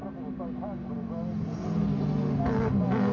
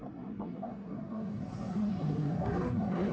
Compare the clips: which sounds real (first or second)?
first